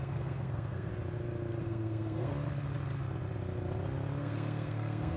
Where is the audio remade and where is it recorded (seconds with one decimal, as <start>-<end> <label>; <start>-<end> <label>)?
0.0-0.9 remade; 0.9-1.6 recorded; 1.6-2.3 remade; 2.3-4.2 recorded; 4.2-5.2 remade